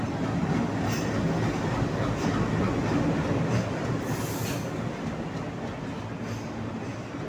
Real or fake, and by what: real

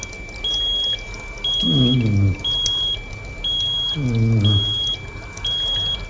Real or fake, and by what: real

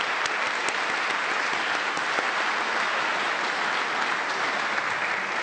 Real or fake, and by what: real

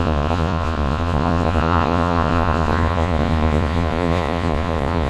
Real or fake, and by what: fake, vocoder, Vocos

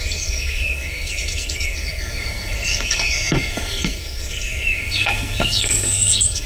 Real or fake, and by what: fake, codec, SNAC